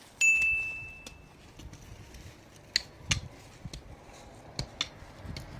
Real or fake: real